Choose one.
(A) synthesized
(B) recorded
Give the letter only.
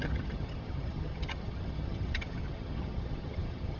A